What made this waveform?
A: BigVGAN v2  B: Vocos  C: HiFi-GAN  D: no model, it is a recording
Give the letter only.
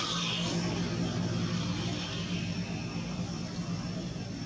D